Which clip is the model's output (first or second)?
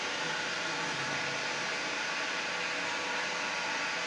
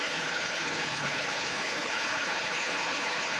second